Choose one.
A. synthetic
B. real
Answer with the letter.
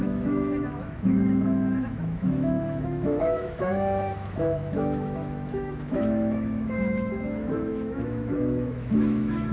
A